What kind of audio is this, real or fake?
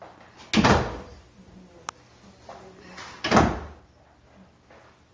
real